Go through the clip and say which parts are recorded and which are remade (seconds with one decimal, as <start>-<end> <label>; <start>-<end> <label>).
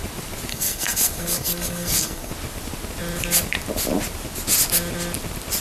0.0-0.5 recorded; 0.5-2.3 remade; 2.3-5.6 recorded